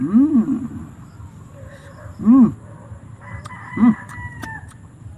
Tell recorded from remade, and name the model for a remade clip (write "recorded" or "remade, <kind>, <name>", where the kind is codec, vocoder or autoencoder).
recorded